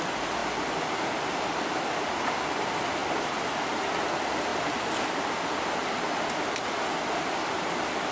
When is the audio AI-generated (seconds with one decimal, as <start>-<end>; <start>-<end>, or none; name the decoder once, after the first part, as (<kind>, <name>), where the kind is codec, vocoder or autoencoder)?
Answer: none